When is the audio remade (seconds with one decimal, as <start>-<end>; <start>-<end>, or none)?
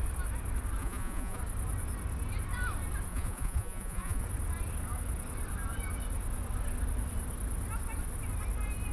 0.8-1.4; 3.1-4.2